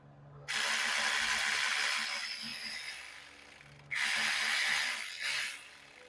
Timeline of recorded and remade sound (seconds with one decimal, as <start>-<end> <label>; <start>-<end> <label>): 0.0-6.1 recorded